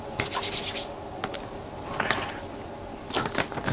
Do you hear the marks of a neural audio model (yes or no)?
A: no